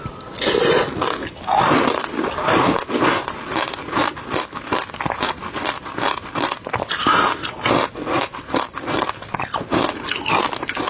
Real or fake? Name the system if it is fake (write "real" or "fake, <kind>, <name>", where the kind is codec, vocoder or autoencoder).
real